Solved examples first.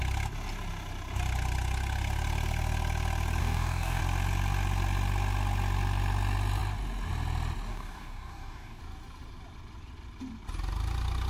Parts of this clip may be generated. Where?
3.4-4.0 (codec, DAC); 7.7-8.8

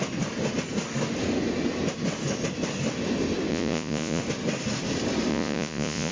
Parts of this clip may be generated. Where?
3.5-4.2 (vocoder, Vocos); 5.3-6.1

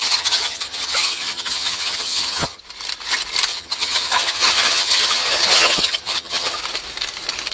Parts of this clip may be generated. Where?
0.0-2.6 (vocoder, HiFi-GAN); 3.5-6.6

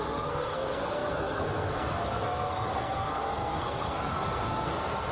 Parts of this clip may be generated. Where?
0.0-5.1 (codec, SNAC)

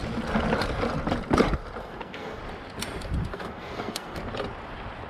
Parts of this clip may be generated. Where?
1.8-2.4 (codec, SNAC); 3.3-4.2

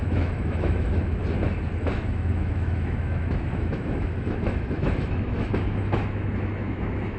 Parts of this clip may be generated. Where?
0.0-1.2 (autoencoder, DAC-VAE); 1.8-7.2

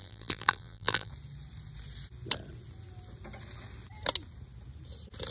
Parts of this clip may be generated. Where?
0.0-1.1 (vocoder, BigVGAN v2)

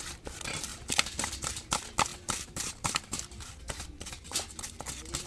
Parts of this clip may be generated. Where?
0.7-1.3 (vocoder, BigVGAN v2); 2.1-3.5